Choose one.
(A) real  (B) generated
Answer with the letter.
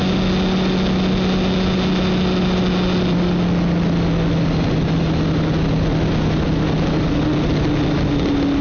A